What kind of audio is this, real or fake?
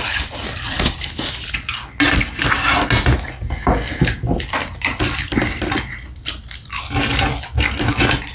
real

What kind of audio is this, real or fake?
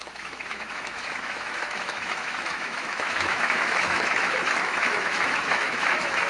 fake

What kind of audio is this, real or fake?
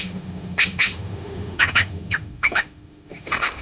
fake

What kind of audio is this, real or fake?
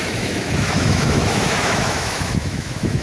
fake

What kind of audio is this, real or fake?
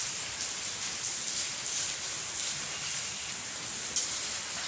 real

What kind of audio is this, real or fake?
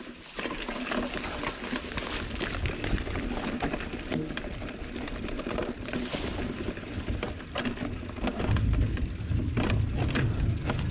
real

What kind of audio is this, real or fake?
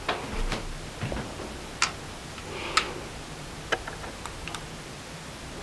real